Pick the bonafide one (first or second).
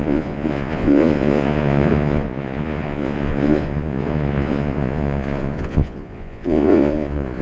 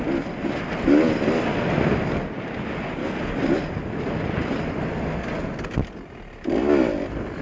second